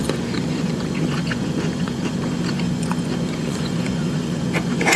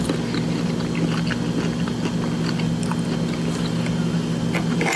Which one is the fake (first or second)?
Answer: first